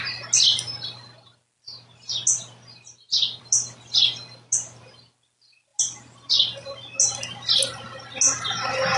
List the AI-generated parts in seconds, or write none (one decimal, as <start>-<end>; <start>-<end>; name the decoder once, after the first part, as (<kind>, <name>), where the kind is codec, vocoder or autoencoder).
none